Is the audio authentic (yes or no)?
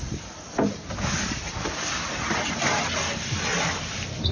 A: yes